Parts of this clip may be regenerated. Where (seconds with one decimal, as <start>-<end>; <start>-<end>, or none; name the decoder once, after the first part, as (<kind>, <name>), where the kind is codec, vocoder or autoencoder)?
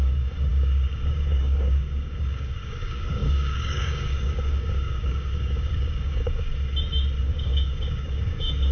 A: 0.0-6.5 (codec, DAC); 7.2-8.7